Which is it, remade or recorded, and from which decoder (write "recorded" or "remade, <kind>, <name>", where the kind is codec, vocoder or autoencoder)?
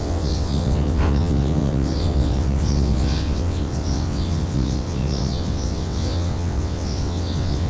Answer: remade, vocoder, WaveNeXt